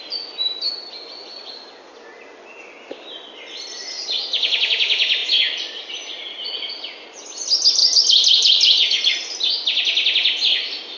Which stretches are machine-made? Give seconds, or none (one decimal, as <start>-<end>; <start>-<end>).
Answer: none